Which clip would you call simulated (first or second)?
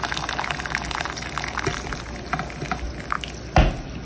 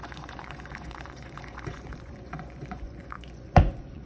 second